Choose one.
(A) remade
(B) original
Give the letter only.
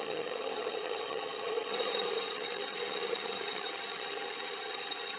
A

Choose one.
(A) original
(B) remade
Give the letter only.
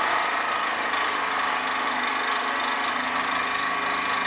A